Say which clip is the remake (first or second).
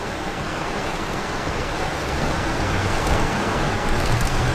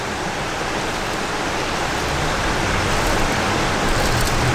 first